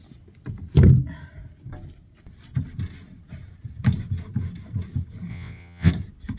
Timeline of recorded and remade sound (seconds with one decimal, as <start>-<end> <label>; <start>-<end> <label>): 0.0-5.3 recorded; 5.3-5.9 remade; 5.9-6.4 recorded